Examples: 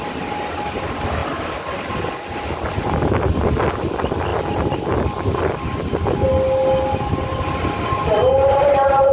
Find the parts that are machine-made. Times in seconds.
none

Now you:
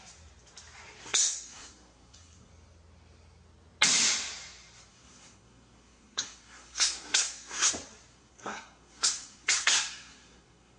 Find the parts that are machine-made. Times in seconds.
1.0-2.5 (codec, SNAC); 4.9-7.7; 8.1-10.8

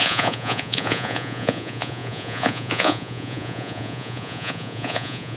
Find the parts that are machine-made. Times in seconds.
0.0-5.4 (vocoder, Vocos)

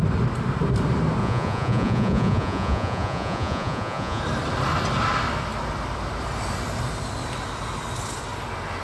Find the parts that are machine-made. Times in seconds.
1.2-4.2 (vocoder, Vocos)

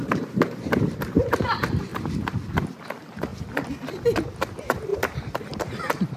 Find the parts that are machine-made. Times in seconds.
0.0-3.3 (vocoder, BigVGAN v2); 4.2-6.2

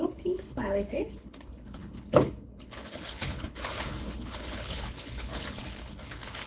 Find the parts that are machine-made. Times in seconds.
0.0-6.5 (codec, HILCodec)